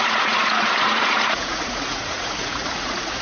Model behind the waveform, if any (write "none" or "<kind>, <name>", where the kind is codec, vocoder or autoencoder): vocoder, Vocos